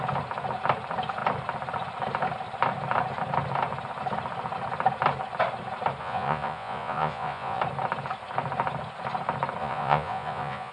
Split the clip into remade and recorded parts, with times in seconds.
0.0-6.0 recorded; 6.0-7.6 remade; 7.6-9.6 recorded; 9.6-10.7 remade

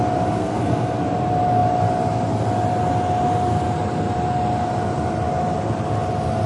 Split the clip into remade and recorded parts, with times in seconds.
0.0-0.4 recorded; 0.4-1.0 remade; 1.0-6.5 recorded

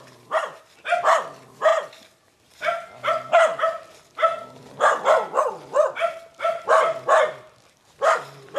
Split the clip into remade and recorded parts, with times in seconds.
0.0-8.6 recorded

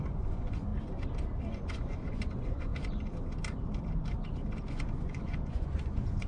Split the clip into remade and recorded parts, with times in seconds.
0.0-0.7 remade; 0.7-1.5 recorded; 1.5-2.7 remade; 2.7-4.7 recorded; 4.7-6.3 remade

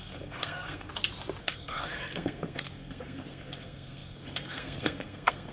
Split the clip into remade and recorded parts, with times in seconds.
0.0-0.9 remade; 0.9-1.4 recorded; 1.4-5.5 remade

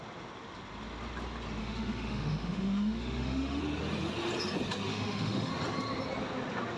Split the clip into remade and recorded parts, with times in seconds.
0.0-1.6 recorded; 1.6-3.6 remade; 3.6-4.9 recorded; 4.9-5.5 remade; 5.5-6.8 recorded

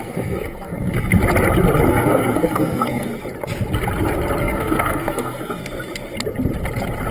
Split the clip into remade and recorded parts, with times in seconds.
0.0-1.1 remade; 1.1-1.9 recorded; 1.9-3.1 remade; 3.1-4.4 recorded; 4.4-5.6 remade; 5.6-7.1 recorded